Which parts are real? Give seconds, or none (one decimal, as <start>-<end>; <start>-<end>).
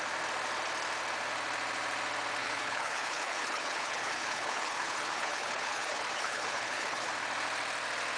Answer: 0.0-2.4; 7.1-8.2